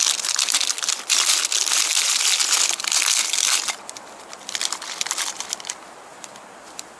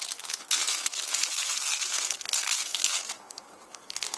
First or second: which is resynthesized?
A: second